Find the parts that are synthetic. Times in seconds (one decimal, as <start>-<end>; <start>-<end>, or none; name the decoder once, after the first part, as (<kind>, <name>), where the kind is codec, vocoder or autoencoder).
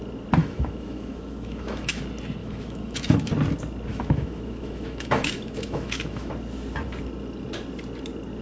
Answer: 0.4-2.0 (autoencoder, DAC-VAE); 2.4-3.3; 3.9-6.3